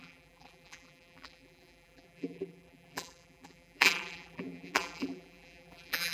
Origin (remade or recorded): remade